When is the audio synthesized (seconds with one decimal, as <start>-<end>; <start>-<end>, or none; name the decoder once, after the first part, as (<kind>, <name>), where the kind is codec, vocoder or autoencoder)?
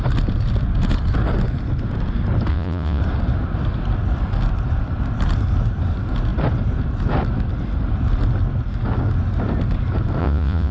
2.5-3.0 (vocoder, Vocos); 10.2-10.7